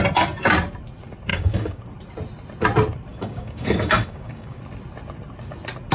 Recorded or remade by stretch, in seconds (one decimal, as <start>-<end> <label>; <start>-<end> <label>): 0.0-1.3 recorded; 1.3-1.8 remade; 1.8-3.1 recorded; 3.1-4.6 remade; 4.6-5.9 recorded